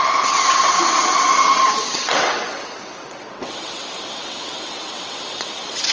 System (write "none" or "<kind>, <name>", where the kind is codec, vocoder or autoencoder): vocoder, WaveNeXt